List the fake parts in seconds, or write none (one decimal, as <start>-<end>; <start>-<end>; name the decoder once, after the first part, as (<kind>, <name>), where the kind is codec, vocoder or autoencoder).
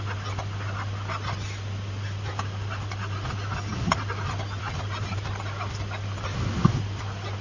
none